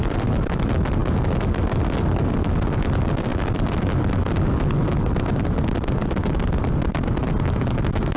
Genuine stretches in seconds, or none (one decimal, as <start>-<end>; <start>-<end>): 0.0-8.2